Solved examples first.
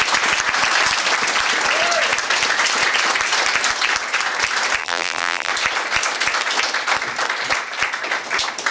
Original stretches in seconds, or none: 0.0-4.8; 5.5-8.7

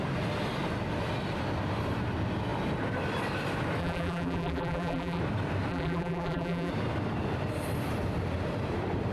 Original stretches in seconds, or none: 0.0-3.8; 5.2-5.7; 6.7-9.1